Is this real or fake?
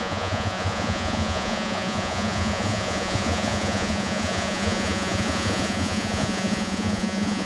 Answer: fake